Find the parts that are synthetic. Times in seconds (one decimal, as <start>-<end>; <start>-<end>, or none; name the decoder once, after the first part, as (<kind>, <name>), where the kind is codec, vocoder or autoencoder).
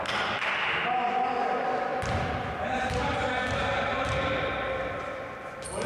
none